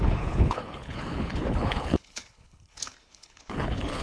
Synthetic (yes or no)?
yes